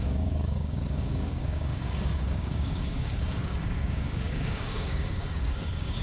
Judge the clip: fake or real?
fake